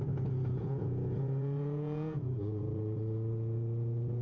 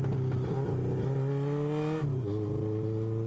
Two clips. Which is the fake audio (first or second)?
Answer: first